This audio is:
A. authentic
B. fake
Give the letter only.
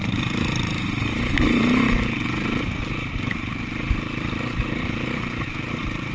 B